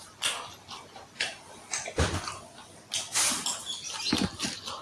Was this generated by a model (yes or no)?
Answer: no